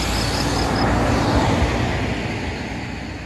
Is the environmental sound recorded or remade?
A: recorded